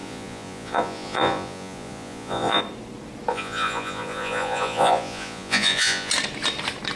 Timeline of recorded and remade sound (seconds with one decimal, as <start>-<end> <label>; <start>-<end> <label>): 0.0-2.6 remade; 2.6-3.3 recorded; 3.3-6.1 remade; 6.1-7.0 recorded